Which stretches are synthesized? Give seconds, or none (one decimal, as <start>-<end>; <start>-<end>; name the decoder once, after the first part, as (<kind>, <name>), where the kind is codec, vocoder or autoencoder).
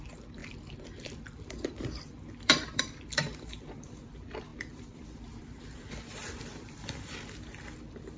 0.0-8.2 (vocoder, BigVGAN v2)